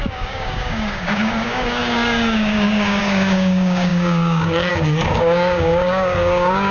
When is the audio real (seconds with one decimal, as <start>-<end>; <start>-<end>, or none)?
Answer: none